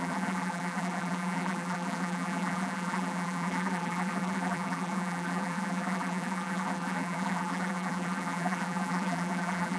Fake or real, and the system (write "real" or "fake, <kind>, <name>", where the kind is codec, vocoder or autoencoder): fake, vocoder, BigVGAN v2